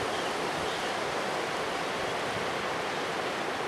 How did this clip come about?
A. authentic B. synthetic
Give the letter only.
A